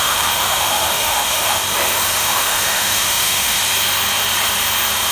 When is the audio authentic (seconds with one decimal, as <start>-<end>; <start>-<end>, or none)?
1.6-2.2; 3.6-5.1